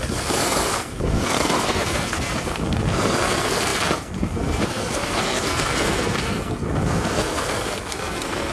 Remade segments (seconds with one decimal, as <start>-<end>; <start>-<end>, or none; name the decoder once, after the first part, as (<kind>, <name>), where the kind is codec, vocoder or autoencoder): 0.0-8.5 (codec, SNAC)